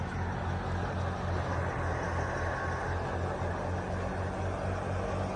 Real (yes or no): yes